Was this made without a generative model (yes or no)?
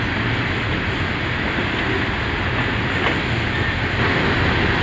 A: yes